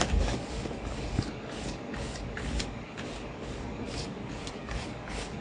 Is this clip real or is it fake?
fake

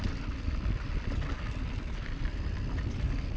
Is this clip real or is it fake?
real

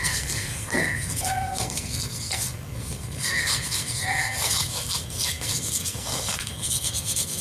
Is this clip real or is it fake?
fake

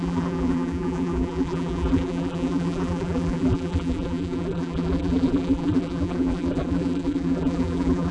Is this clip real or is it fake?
fake